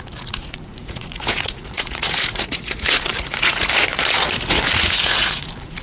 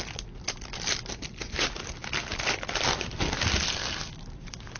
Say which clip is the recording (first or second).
second